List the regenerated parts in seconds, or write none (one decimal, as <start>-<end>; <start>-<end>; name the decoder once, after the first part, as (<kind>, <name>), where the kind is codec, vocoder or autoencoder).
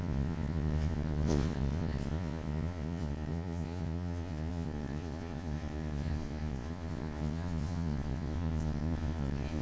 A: 0.0-9.6 (vocoder, Vocos)